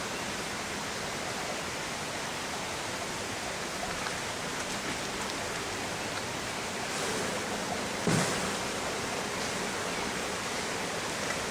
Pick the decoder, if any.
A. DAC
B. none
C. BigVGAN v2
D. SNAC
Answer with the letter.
B